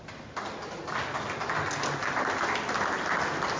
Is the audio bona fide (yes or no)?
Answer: yes